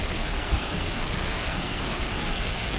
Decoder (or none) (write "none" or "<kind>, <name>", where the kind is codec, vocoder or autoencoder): codec, SNAC